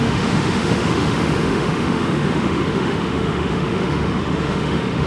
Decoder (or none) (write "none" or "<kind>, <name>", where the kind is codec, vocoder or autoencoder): autoencoder, DAC-VAE